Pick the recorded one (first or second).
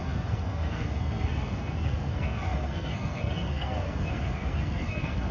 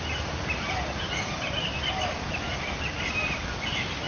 second